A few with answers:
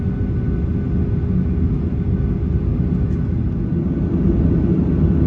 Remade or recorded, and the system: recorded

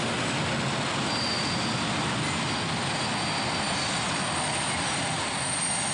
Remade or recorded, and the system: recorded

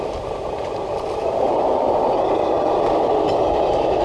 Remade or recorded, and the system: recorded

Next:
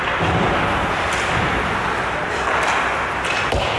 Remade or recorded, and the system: recorded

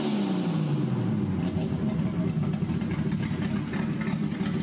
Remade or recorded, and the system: recorded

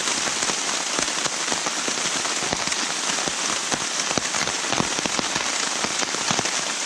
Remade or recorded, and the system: recorded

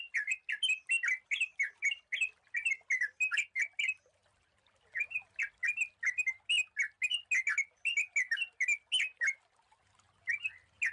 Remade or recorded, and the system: recorded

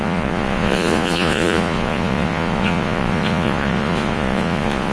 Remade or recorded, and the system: remade, vocoder, Vocos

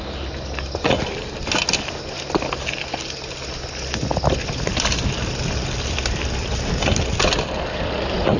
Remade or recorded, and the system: recorded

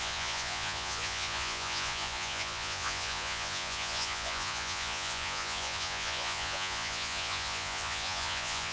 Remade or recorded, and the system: remade, vocoder, Vocos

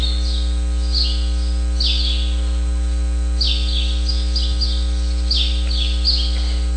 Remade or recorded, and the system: recorded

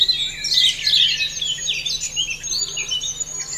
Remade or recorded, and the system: recorded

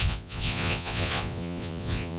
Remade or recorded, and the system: remade, vocoder, Vocos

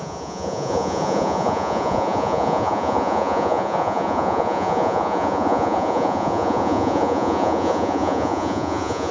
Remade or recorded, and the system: remade, vocoder, Vocos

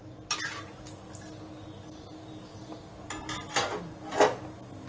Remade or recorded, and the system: recorded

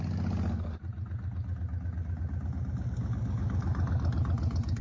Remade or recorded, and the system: recorded